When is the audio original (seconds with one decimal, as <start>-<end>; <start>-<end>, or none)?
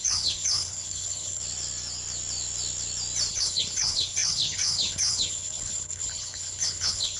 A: 1.4-3.3